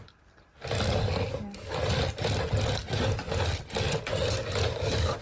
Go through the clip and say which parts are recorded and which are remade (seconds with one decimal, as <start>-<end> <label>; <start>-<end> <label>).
0.0-1.3 recorded; 1.3-1.8 remade; 1.8-4.4 recorded; 4.4-5.2 remade